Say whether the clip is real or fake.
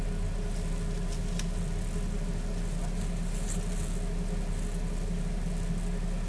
real